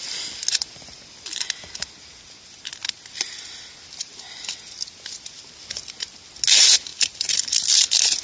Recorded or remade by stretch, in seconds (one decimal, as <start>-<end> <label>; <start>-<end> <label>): 0.0-6.9 recorded; 6.9-8.2 remade